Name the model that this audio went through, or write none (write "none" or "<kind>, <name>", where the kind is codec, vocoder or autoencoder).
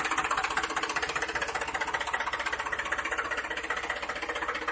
none